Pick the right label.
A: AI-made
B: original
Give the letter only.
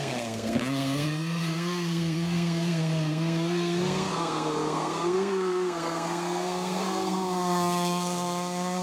A